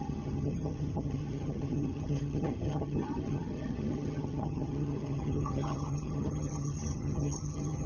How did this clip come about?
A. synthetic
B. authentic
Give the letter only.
A